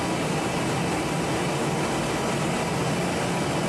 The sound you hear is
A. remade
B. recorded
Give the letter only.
B